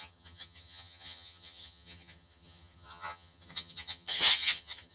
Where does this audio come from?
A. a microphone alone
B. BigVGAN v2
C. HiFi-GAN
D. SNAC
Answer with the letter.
C